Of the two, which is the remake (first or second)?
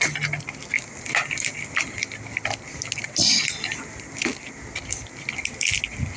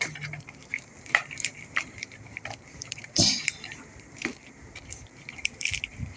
second